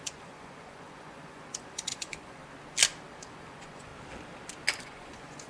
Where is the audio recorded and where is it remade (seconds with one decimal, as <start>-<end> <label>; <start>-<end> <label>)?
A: 0.0-2.4 remade; 2.4-3.1 recorded; 3.1-3.9 remade; 3.9-4.8 recorded; 4.8-5.5 remade